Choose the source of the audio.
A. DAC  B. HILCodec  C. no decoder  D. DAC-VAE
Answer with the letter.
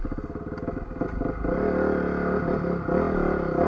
C